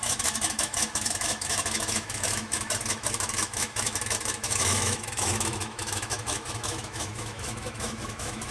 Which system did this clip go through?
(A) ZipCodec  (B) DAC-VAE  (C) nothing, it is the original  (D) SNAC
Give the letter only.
B